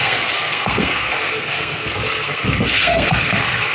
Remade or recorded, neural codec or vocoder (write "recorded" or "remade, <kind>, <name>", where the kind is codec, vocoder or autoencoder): remade, codec, SNAC